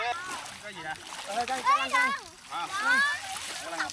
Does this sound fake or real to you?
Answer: real